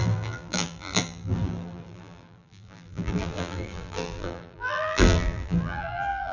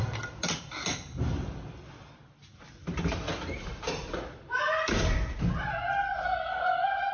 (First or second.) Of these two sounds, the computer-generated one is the first